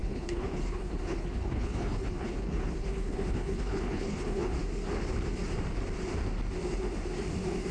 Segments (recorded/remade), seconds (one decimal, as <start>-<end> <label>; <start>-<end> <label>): 0.0-4.6 remade; 4.6-7.7 recorded